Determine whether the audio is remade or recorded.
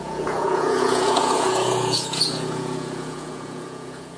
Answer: remade